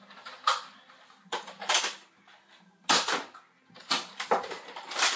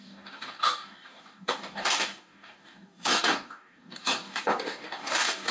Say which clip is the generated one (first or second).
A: second